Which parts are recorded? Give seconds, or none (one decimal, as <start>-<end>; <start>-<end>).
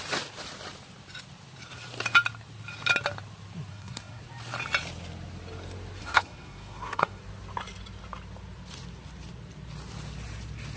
0.0-3.7; 4.2-6.0; 7.2-10.8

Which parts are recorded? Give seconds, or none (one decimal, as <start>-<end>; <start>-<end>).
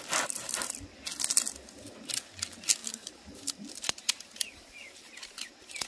0.0-2.8; 3.7-5.9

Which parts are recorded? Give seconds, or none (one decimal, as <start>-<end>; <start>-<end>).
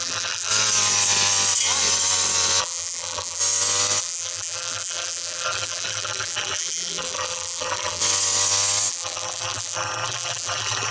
0.5-2.6; 3.4-4.0; 8.0-8.9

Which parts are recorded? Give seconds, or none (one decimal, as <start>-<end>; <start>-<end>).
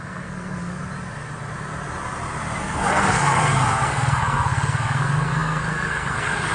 0.8-2.6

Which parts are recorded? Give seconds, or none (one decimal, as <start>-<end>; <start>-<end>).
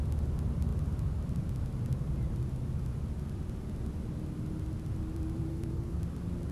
0.0-5.5; 6.0-6.5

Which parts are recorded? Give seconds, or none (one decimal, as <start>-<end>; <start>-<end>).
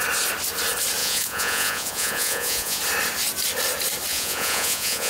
0.0-1.0; 2.8-4.1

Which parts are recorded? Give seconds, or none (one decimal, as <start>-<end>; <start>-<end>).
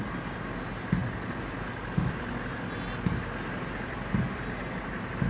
0.0-5.3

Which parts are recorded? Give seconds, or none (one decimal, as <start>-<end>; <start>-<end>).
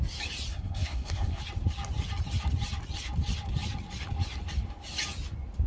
0.0-0.5; 1.4-5.7